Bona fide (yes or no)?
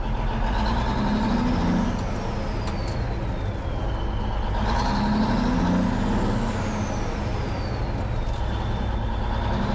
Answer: yes